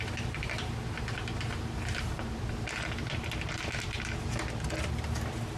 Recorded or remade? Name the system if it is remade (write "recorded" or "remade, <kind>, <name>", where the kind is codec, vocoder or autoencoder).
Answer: recorded